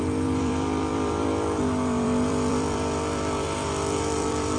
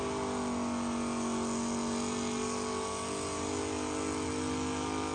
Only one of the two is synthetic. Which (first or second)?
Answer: first